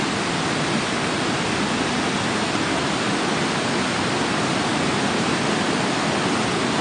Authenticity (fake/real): real